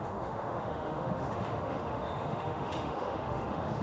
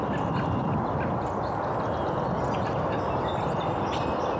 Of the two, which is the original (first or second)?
second